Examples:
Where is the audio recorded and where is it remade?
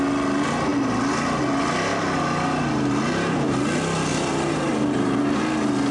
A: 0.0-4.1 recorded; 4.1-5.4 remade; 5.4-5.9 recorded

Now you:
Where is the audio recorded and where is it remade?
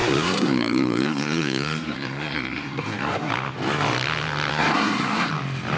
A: 0.0-3.3 remade; 3.3-4.5 recorded; 4.5-5.3 remade; 5.3-5.8 recorded